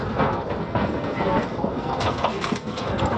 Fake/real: fake